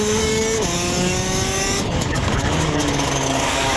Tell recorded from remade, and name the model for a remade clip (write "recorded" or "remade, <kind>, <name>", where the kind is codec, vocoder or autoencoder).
remade, codec, DAC